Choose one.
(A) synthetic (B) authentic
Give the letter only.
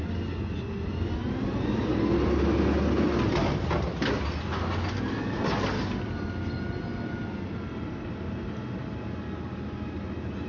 B